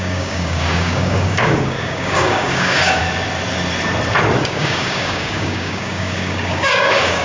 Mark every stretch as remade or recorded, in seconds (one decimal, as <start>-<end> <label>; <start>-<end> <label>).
0.0-3.0 remade; 3.0-4.4 recorded; 4.4-7.2 remade